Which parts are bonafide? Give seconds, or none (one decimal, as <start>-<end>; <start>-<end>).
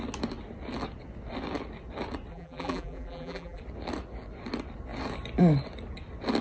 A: 0.0-2.3; 3.6-6.4